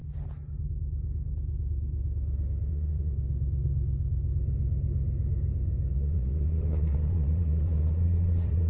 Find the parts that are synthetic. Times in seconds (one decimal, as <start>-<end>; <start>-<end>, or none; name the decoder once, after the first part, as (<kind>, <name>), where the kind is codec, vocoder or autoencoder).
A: 2.7-3.1 (vocoder, Vocos); 5.9-8.7